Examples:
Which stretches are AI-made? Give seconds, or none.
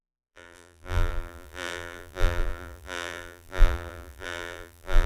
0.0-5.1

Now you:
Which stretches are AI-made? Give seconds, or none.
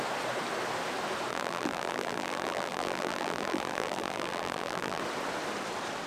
1.3-5.0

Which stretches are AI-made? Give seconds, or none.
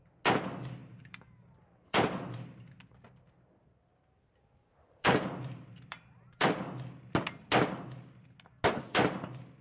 0.8-2.7; 3.9-6.5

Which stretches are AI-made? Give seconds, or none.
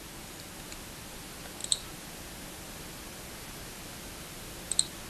none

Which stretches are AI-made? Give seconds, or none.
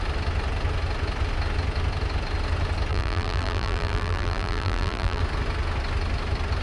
2.9-5.2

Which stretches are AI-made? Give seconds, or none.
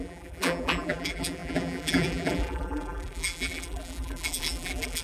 0.0-5.0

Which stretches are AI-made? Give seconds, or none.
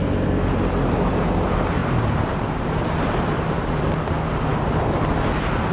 1.8-3.8